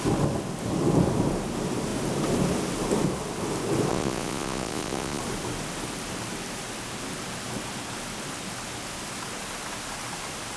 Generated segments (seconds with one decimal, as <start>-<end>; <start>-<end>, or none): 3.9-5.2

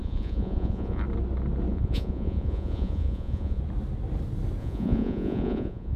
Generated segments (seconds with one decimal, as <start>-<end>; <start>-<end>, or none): 0.0-1.0; 1.7-3.6; 4.6-6.0

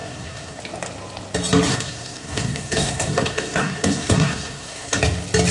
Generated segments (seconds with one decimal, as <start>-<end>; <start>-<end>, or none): 0.0-0.6; 1.7-5.0

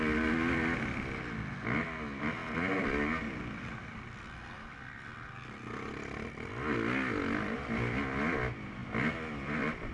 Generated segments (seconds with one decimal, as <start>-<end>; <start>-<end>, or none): none